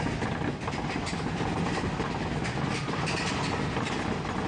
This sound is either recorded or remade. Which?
recorded